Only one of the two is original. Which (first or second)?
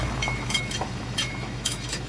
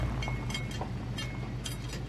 second